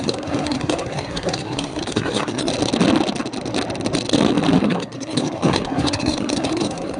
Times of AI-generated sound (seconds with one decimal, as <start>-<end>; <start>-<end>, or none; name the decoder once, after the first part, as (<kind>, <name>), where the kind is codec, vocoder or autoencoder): 0.0-2.5 (codec, SNAC); 4.6-7.0